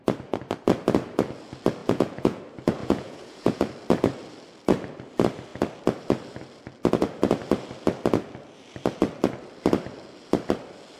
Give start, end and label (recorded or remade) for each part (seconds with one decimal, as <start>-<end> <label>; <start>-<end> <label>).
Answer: 0.0-1.8 recorded; 1.8-2.4 remade; 2.4-2.8 recorded; 2.8-3.7 remade; 3.7-11.0 recorded